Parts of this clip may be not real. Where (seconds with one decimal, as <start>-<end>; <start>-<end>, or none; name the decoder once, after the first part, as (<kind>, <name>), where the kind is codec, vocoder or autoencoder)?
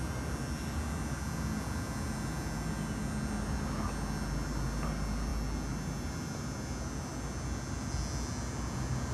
none